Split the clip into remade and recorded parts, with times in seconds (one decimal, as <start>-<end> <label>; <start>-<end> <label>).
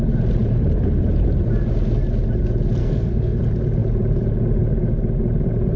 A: 0.0-2.8 recorded; 2.8-3.4 remade; 3.4-5.8 recorded